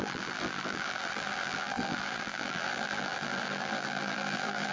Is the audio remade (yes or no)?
yes